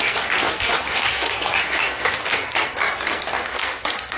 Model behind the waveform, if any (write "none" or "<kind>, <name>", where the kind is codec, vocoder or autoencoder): codec, SNAC